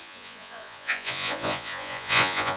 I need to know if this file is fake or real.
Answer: fake